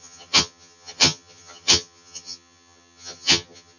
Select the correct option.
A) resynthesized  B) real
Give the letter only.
A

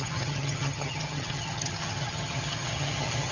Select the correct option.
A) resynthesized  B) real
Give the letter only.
A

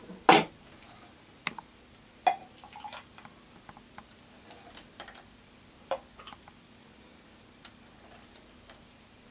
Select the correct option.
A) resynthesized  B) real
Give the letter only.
B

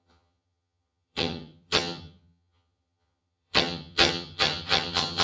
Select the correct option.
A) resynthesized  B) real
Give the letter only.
A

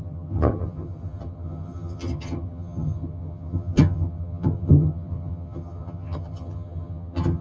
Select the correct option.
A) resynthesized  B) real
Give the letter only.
A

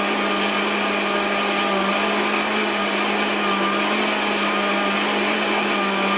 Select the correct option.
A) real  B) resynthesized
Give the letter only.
A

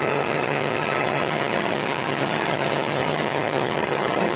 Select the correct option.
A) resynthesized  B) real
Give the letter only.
A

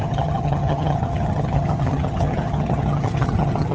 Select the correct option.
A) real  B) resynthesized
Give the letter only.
B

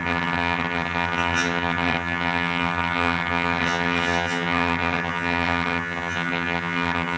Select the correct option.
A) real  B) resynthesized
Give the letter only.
B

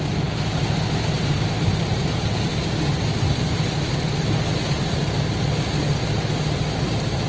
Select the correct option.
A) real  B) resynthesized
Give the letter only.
A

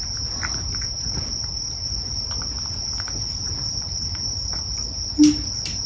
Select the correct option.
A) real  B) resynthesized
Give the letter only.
A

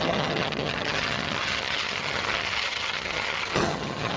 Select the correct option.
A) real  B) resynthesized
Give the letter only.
B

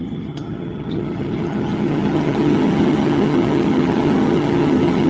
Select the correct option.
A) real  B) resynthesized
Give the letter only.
B